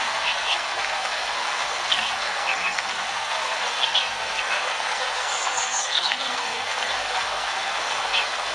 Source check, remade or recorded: remade